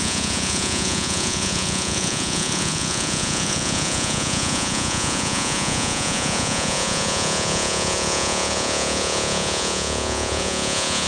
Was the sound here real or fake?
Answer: fake